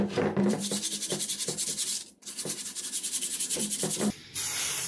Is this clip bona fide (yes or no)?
no